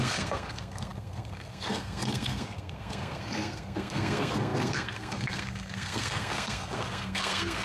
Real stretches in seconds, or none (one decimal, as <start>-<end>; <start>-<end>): none